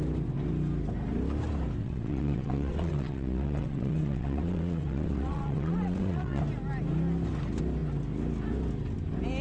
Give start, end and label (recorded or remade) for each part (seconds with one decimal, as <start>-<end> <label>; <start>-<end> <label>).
0.0-1.8 recorded; 1.8-6.4 remade; 6.4-9.4 recorded